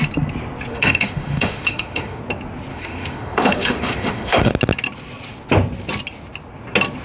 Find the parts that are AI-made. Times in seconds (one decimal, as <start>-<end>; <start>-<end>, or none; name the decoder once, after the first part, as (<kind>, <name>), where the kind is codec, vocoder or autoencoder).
0.7-2.2 (autoencoder, DAC-VAE); 2.7-4.5